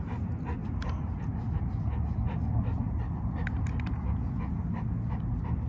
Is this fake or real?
real